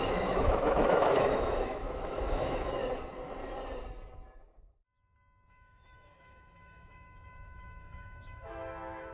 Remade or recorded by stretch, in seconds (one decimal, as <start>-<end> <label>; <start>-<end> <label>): 0.0-2.8 remade; 2.8-5.5 recorded; 5.5-9.1 remade